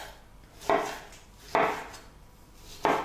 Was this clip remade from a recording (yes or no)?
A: no